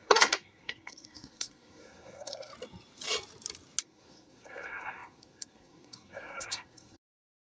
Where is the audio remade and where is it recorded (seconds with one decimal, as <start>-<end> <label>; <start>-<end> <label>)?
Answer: 0.0-2.5 remade; 2.5-3.8 recorded; 3.8-7.6 remade